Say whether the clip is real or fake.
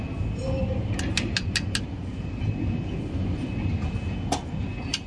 real